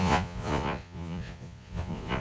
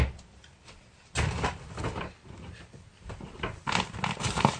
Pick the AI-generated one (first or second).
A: first